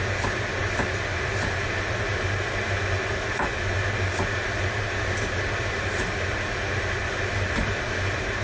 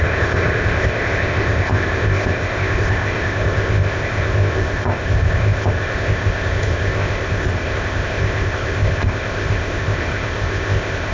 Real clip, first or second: first